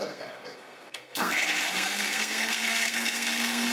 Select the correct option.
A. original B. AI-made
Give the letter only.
B